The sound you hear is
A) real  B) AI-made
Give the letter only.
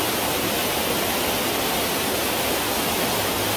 A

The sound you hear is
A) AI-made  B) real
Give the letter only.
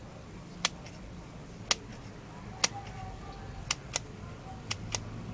B